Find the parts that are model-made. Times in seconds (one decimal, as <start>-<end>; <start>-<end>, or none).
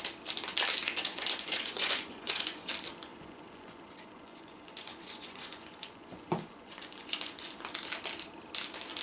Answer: 0.8-2.7; 3.1-7.5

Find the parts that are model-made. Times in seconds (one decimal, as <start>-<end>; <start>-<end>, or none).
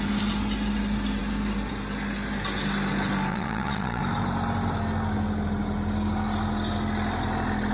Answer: 3.3-4.0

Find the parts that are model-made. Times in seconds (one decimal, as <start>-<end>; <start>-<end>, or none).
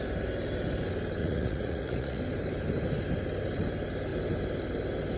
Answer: 1.2-2.2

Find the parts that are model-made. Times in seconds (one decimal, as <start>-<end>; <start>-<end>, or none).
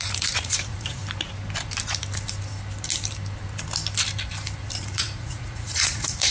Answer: 0.0-1.0; 4.8-6.3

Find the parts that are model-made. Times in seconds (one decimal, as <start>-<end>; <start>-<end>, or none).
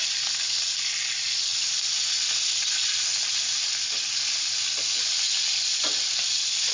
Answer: none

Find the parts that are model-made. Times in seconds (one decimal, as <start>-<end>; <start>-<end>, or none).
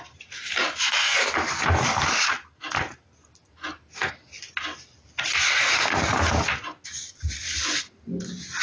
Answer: none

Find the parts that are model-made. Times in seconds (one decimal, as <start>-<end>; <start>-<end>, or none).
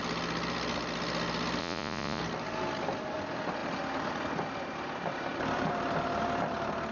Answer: 1.6-2.2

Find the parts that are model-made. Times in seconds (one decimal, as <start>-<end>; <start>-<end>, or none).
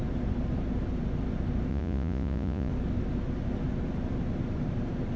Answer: 1.7-2.7